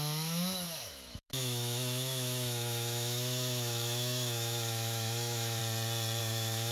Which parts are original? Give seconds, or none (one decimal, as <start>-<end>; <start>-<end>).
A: 5.6-6.2